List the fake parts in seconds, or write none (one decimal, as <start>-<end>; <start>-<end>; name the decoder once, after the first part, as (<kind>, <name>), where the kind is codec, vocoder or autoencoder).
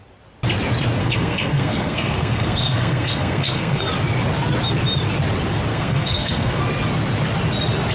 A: 1.0-3.8 (codec, SNAC); 5.7-6.6